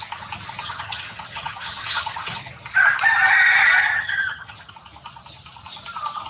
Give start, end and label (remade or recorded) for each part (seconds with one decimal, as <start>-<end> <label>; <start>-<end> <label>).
0.0-0.6 recorded; 0.6-2.5 remade; 2.5-3.9 recorded; 3.9-4.7 remade; 4.7-6.3 recorded